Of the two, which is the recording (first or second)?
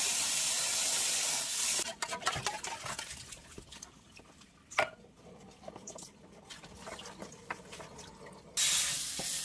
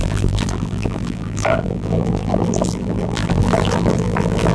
first